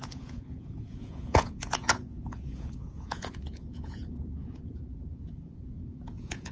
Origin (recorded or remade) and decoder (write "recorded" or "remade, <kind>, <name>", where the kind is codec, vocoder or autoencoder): remade, vocoder, Vocos